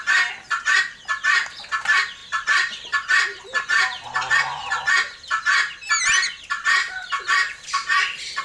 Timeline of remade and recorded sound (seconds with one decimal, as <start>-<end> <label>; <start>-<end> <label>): 0.0-2.2 recorded; 2.2-4.4 remade; 4.4-6.8 recorded; 6.8-8.4 remade